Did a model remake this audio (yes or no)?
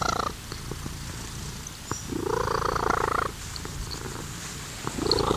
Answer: no